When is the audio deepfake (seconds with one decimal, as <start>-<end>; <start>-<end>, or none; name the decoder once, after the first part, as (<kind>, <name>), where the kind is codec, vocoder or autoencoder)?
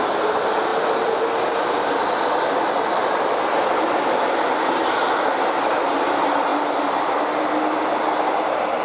none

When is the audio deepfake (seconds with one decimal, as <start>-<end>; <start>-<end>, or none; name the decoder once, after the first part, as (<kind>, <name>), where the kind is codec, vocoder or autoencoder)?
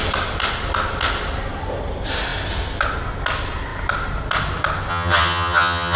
4.9-6.0 (vocoder, HiFi-GAN)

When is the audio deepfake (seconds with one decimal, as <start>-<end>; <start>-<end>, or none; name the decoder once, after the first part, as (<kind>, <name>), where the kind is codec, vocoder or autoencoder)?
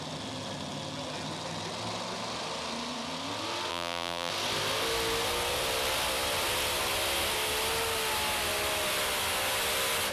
3.7-4.3 (vocoder, BigVGAN v2)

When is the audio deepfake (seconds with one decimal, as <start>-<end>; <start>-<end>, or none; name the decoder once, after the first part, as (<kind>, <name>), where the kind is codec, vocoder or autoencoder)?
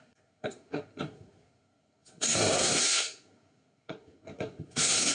0.0-5.1 (codec, SNAC)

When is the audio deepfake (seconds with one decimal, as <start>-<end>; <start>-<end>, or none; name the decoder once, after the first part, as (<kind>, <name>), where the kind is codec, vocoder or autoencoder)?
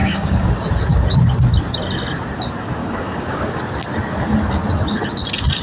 0.0-0.5 (codec, DAC); 2.8-3.6